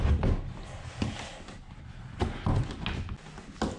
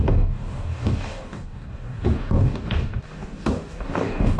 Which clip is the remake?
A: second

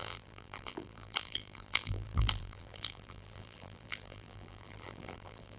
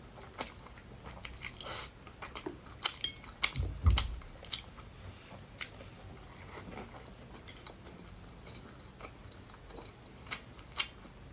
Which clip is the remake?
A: first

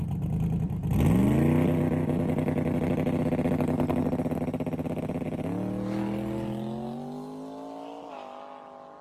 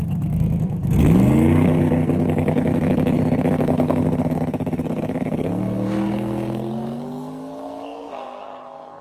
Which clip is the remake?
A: second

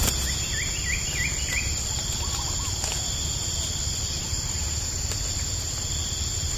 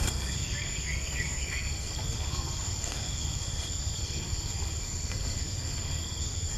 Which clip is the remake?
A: second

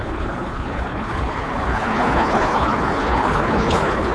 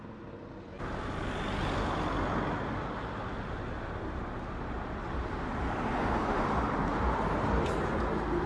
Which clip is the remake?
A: first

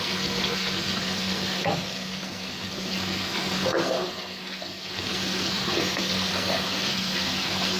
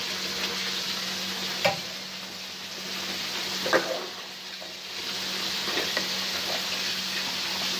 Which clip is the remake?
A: first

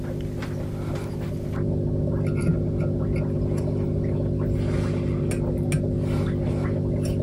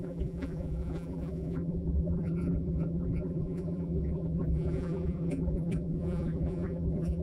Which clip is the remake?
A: second